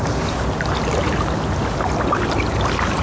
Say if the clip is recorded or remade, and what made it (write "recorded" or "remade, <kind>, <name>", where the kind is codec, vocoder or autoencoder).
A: recorded